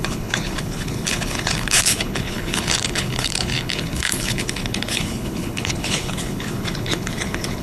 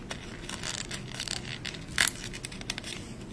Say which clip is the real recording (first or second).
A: second